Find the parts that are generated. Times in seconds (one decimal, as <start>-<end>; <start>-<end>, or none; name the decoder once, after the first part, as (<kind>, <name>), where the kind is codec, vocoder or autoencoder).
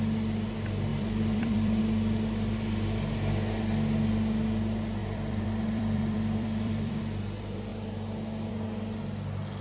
0.9-1.8 (vocoder, BigVGAN v2); 5.0-7.0